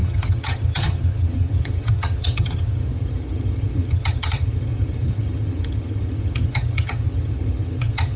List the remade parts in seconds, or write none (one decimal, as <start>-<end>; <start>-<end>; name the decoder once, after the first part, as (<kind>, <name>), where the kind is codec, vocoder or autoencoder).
0.0-8.2 (vocoder, HiFi-GAN)